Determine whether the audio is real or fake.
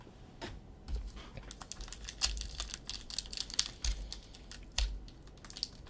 real